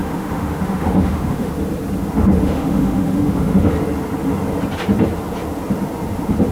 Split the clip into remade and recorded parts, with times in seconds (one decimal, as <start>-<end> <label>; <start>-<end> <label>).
0.0-1.5 remade; 1.5-2.4 recorded; 2.4-3.7 remade; 3.7-6.5 recorded